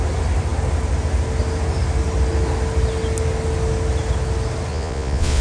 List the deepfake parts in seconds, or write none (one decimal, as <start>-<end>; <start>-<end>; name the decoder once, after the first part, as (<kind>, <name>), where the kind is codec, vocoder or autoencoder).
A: 4.7-5.4 (vocoder, Vocos)